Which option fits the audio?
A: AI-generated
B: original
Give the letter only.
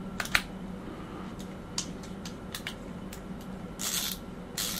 B